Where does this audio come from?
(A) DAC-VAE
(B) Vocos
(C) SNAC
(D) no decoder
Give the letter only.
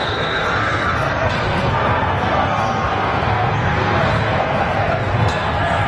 C